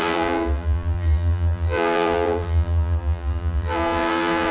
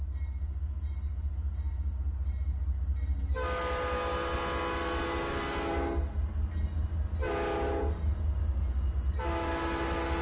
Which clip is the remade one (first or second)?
first